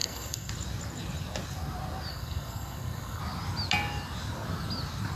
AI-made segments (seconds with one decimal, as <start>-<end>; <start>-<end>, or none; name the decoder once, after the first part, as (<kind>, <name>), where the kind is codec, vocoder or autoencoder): 0.0-0.5 (codec, SNAC); 2.1-3.2